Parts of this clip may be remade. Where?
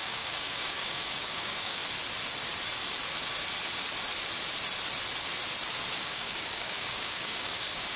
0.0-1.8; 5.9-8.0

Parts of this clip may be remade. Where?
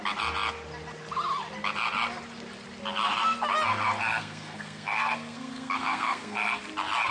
4.2-6.6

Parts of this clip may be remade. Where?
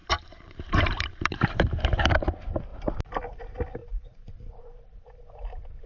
0.0-2.1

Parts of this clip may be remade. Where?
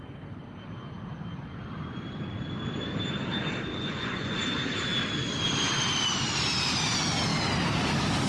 3.7-4.4